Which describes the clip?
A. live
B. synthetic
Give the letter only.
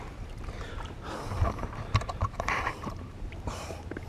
B